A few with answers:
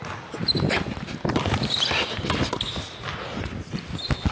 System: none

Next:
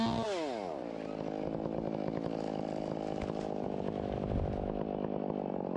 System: none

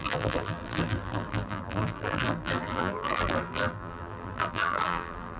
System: vocoder, BigVGAN v2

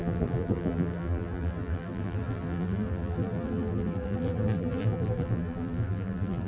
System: vocoder, BigVGAN v2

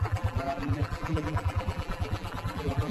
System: vocoder, BigVGAN v2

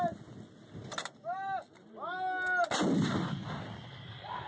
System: none